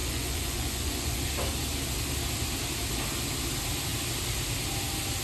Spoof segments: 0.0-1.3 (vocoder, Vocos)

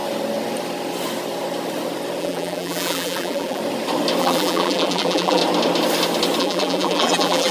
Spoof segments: 2.2-3.6 (vocoder, BigVGAN v2); 4.2-5.4; 6.4-7.5

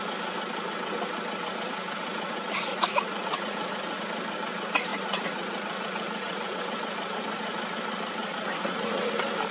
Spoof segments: 2.7-4.0 (vocoder, Vocos); 4.9-6.6; 8.2-9.1

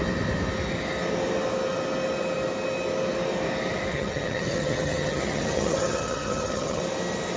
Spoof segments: 3.9-6.8 (vocoder, HiFi-GAN)